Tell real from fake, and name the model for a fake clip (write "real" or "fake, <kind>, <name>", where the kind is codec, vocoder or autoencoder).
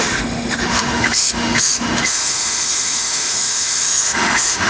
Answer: fake, autoencoder, DAC-VAE